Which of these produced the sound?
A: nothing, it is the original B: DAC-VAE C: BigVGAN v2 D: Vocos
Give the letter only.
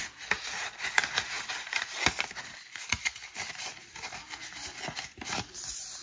A